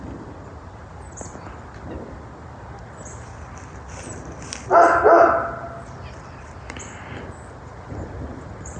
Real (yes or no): yes